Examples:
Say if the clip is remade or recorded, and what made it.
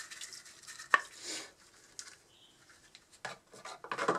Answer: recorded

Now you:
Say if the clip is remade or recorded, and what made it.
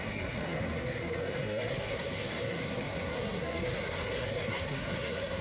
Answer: remade, codec, SNAC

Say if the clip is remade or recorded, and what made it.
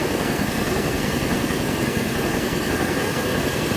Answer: remade, codec, SNAC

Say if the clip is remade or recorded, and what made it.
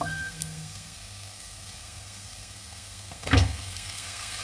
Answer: remade, codec, SNAC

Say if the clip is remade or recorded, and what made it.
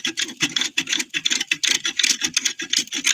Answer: recorded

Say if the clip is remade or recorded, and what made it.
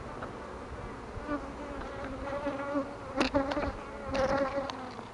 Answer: recorded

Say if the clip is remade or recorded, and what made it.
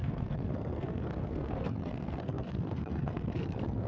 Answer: remade, codec, SNAC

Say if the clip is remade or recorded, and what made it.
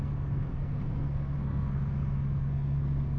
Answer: remade, codec, SNAC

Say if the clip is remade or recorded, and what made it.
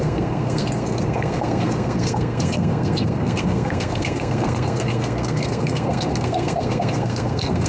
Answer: remade, codec, SNAC